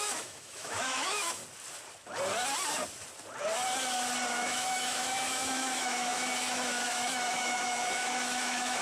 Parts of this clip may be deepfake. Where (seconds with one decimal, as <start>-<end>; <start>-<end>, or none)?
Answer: 0.0-1.4; 4.3-8.8